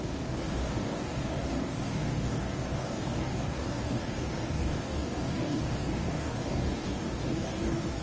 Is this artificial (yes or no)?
yes